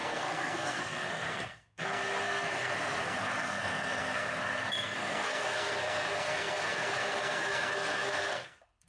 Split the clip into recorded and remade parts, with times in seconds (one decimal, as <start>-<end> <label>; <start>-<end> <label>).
0.0-8.9 remade